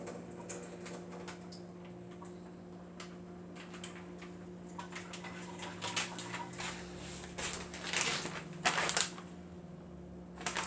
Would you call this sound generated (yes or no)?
no